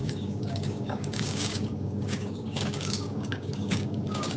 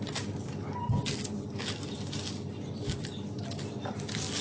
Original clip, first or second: second